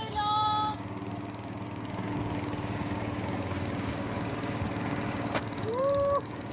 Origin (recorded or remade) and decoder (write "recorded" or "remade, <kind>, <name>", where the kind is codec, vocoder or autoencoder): remade, codec, DAC